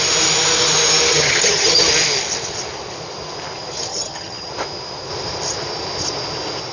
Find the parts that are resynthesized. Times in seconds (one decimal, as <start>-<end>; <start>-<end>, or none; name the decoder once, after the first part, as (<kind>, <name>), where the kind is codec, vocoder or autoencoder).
1.1-1.8 (vocoder, HiFi-GAN); 3.9-4.5